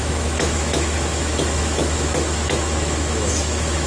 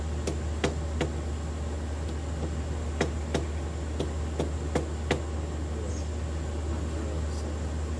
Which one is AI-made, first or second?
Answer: first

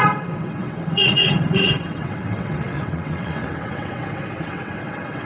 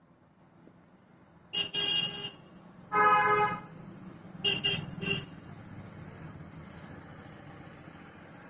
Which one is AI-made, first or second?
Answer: first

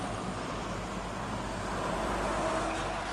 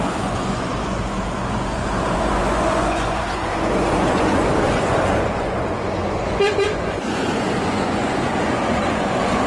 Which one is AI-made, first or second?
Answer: second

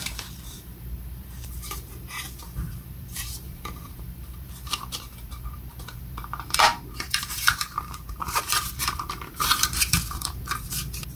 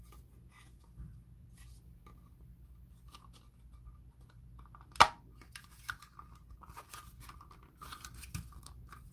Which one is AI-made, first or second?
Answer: first